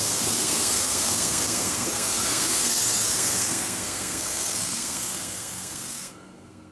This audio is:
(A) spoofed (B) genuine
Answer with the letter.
A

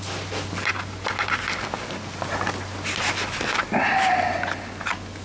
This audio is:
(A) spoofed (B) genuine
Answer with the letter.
B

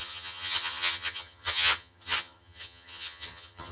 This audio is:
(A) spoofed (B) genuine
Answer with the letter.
A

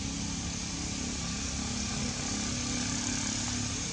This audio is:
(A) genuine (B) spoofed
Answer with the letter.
A